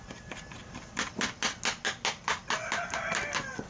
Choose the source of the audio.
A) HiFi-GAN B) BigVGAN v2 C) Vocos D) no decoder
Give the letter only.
D